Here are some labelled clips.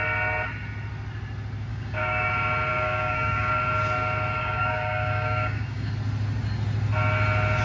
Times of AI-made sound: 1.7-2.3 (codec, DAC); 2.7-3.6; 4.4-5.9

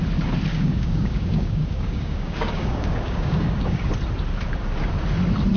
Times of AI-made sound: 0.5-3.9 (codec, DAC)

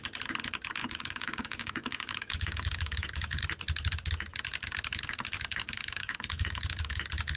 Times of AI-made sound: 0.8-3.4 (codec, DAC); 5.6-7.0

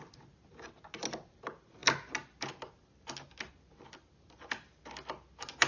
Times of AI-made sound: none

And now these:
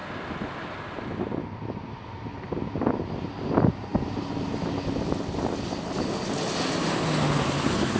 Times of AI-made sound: none